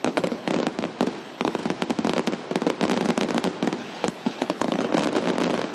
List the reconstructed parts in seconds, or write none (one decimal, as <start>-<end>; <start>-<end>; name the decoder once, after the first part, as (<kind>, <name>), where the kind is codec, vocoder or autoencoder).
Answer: 0.0-0.5 (codec, HILCodec); 1.2-1.6; 3.8-4.9